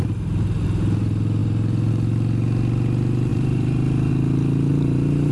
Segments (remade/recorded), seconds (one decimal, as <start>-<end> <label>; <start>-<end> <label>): 0.0-1.4 recorded; 1.4-1.9 remade; 1.9-3.3 recorded; 3.3-4.1 remade; 4.1-4.7 recorded; 4.7-5.3 remade